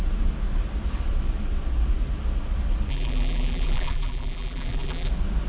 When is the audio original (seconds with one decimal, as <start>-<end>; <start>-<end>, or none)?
0.0-2.9; 5.1-5.5